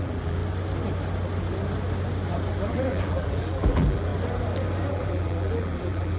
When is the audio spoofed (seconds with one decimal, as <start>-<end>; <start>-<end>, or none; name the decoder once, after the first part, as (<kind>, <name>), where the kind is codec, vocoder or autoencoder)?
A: 0.0-0.4 (vocoder, BigVGAN v2); 2.7-4.1; 4.9-6.2

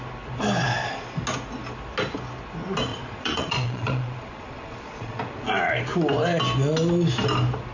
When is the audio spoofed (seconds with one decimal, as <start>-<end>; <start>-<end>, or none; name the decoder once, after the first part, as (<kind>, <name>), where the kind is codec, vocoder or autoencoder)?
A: 2.9-5.2 (vocoder, Vocos)

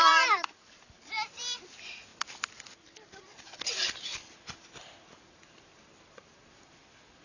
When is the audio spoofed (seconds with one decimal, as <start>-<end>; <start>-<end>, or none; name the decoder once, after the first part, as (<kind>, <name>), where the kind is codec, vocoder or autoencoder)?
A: 0.0-2.1 (vocoder, BigVGAN v2); 3.2-7.2

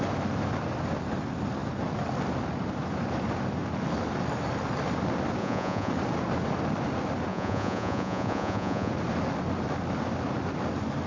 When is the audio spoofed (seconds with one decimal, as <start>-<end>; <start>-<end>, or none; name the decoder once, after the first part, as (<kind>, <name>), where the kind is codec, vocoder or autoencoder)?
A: 5.4-5.9 (vocoder, Vocos); 7.3-8.9